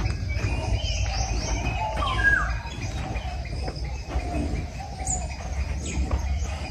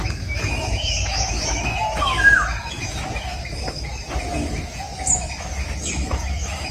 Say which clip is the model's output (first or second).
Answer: second